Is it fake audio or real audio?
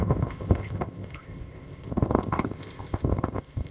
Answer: fake